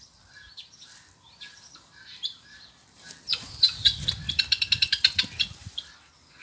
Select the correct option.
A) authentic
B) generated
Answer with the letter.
B